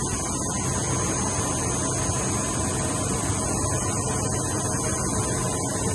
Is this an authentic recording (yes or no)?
yes